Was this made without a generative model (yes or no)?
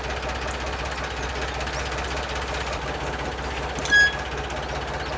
yes